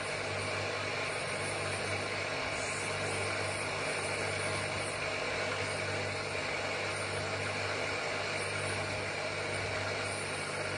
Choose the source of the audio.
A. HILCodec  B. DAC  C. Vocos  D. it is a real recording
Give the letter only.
D